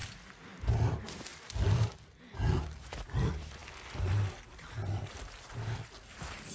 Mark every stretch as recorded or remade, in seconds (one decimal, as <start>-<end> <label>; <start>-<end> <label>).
0.0-1.3 recorded; 1.3-1.9 remade; 1.9-6.5 recorded